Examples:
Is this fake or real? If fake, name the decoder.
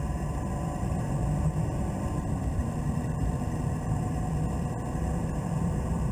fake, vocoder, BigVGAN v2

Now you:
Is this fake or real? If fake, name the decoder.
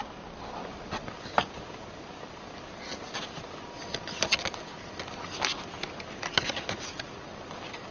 real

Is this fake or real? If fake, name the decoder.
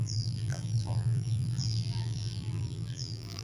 fake, vocoder, BigVGAN v2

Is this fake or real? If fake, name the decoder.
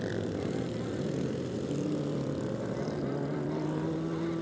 fake, vocoder, BigVGAN v2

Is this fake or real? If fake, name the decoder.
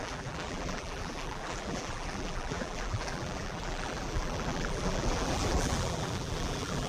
fake, vocoder, BigVGAN v2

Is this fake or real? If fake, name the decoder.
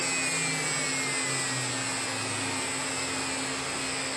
real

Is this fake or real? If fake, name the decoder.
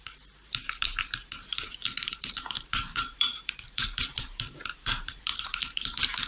fake, vocoder, BigVGAN v2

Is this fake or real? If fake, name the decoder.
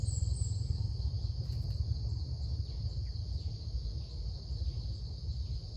real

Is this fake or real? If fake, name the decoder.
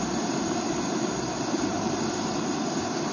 fake, vocoder, BigVGAN v2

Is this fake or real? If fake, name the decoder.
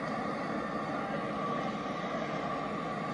real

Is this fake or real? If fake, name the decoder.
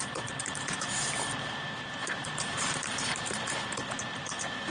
fake, vocoder, BigVGAN v2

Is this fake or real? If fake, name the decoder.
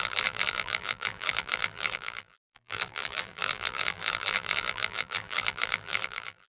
fake, vocoder, BigVGAN v2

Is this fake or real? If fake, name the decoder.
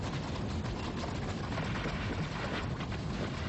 real